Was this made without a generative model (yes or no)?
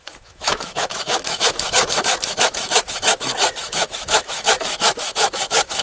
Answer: no